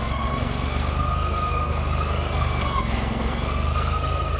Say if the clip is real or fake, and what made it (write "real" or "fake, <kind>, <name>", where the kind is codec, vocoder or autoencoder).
fake, codec, SNAC